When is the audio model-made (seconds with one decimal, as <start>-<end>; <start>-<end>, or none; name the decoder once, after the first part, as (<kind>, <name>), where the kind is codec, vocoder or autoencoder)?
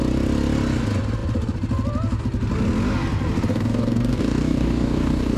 3.5-5.4 (codec, DAC)